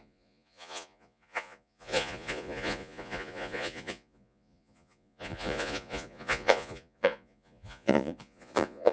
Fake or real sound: fake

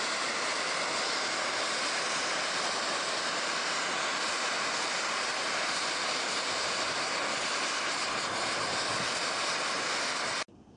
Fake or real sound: real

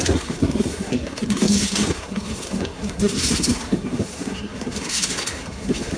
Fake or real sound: fake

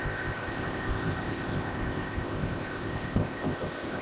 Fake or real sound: fake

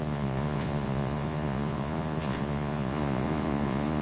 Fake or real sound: fake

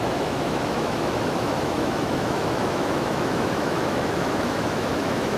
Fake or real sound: fake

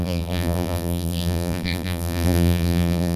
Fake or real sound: fake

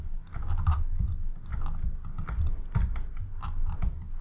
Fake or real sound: real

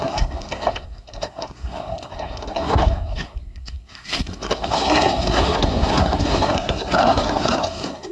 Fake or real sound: fake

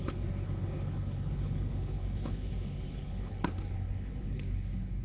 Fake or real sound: fake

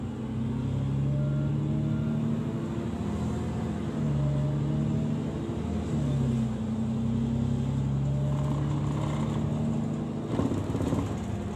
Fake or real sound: real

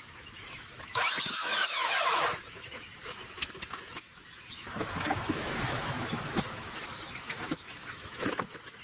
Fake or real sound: fake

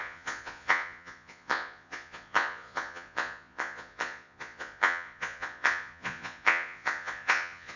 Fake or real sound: fake